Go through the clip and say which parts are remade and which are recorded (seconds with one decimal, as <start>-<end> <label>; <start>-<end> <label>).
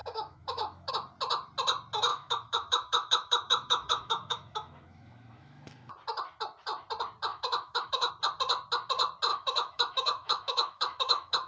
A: 0.0-0.9 remade; 0.9-2.1 recorded; 2.1-5.9 remade; 5.9-7.3 recorded; 7.3-8.1 remade; 8.1-9.3 recorded; 9.3-11.5 remade